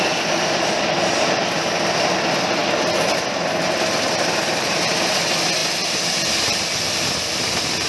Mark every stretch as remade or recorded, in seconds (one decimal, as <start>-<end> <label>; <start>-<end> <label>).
0.0-7.9 recorded

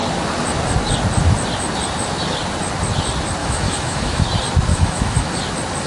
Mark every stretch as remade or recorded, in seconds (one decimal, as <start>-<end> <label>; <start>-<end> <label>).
0.0-3.4 recorded; 3.4-4.2 remade; 4.2-4.7 recorded; 4.7-5.3 remade; 5.3-5.9 recorded